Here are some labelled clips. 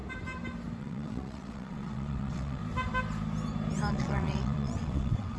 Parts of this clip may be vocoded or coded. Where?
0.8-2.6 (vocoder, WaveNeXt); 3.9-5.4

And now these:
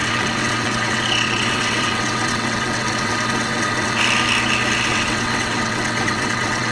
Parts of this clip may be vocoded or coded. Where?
0.0-4.0 (vocoder, WaveNeXt); 4.9-6.7

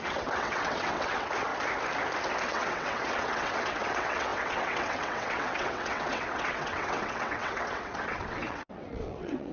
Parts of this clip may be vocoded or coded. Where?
0.0-1.5 (vocoder, WaveNeXt); 2.5-9.5

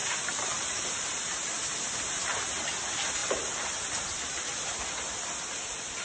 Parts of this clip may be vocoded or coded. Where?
none

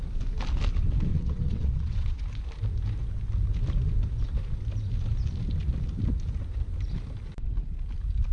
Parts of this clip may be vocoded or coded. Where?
1.1-2.2 (vocoder, WaveNeXt)